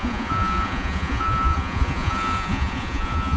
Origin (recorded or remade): remade